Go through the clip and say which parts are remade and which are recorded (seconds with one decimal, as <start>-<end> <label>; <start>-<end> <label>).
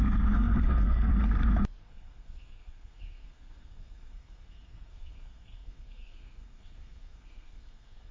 0.0-1.1 remade; 1.1-1.8 recorded; 1.8-8.1 remade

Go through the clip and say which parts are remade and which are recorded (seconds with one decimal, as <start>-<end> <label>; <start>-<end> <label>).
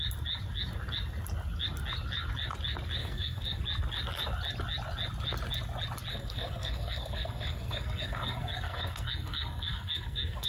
0.0-3.0 recorded; 3.0-3.6 remade; 3.6-6.1 recorded; 6.1-10.5 remade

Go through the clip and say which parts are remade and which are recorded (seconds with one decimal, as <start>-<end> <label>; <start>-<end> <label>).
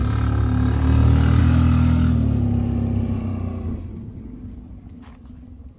0.0-5.8 recorded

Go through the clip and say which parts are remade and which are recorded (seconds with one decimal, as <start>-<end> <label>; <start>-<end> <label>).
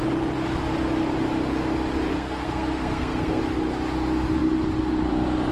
0.0-2.1 recorded; 2.1-3.4 remade; 3.4-5.5 recorded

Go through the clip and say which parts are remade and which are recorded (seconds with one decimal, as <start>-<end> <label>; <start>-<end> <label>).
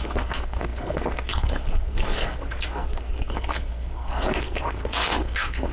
0.0-5.7 remade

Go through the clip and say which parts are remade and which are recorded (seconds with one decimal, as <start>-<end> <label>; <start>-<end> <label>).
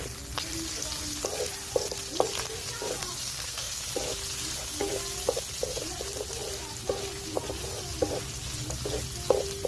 0.0-3.3 recorded; 3.3-3.8 remade; 3.8-9.7 recorded